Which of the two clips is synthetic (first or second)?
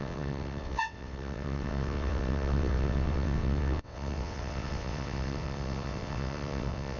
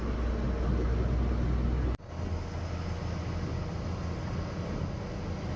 first